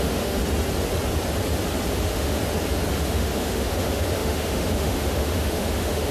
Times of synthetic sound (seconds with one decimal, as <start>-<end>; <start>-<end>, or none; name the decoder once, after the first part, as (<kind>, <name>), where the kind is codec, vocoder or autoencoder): 0.0-0.4 (autoencoder, DAC-VAE); 1.9-2.4; 3.0-6.1